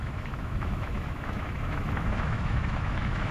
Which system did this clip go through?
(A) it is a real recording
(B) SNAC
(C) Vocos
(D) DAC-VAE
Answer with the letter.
D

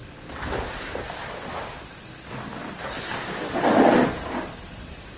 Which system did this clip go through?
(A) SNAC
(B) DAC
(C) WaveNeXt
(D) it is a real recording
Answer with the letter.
D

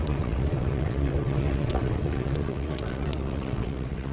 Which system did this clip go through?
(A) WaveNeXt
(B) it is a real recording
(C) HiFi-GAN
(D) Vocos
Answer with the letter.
A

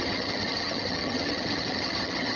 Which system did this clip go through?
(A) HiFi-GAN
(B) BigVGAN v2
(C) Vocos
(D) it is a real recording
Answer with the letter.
A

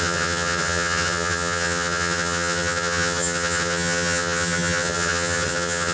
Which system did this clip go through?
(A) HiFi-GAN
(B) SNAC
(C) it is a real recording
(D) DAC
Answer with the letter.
A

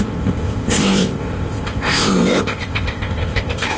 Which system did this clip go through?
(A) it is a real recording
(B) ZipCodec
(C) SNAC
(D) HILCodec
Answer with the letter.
B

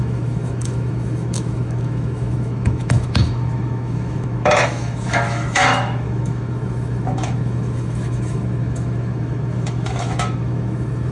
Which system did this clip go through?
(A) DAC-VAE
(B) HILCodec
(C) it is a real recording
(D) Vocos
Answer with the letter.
A